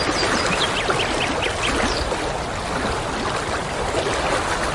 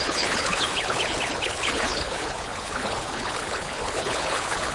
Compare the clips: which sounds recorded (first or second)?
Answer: first